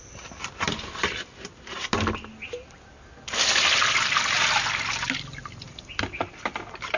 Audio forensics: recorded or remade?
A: recorded